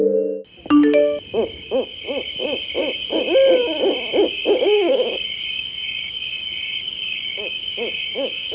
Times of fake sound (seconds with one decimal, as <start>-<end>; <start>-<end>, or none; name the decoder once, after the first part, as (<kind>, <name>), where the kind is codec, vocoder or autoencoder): 4.5-8.5 (codec, DAC)